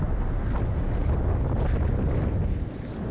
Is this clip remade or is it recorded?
recorded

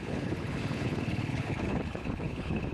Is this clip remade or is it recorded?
remade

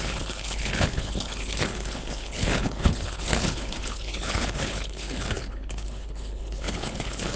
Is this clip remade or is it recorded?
remade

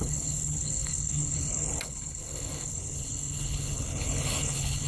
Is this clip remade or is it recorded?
remade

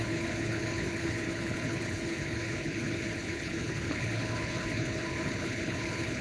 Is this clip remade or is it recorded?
remade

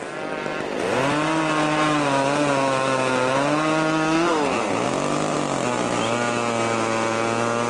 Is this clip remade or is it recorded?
recorded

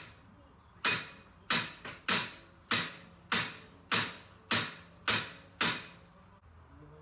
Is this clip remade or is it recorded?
recorded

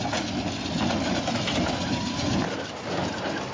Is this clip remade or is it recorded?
recorded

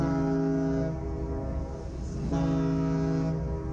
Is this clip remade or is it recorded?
recorded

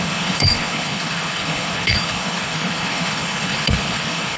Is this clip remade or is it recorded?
remade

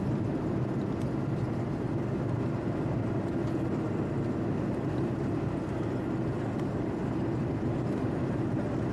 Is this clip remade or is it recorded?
recorded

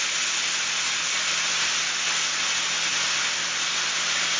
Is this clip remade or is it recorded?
recorded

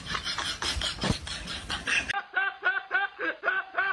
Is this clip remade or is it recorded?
recorded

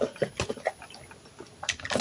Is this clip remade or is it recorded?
recorded